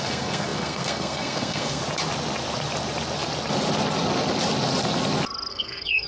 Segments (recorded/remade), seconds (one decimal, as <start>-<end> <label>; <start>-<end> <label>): 0.0-1.8 remade; 1.8-5.5 recorded; 5.5-6.1 remade